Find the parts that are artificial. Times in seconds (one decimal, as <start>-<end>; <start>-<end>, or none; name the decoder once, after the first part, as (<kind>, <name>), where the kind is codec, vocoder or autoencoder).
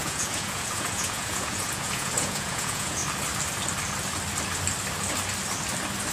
0.0-3.0 (vocoder, Vocos)